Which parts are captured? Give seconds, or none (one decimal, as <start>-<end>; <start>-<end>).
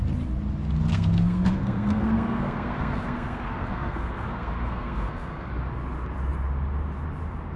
0.0-0.9; 5.5-7.6